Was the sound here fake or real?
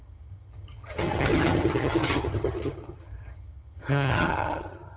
fake